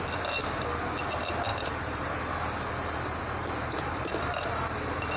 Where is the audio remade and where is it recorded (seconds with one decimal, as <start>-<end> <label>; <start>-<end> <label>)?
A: 0.0-1.5 recorded; 1.5-2.1 remade; 2.1-3.4 recorded; 3.4-4.5 remade; 4.5-5.2 recorded